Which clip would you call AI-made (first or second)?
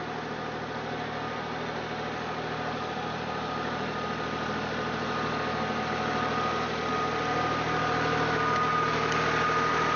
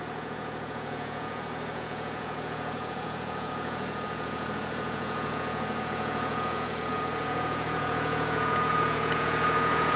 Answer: second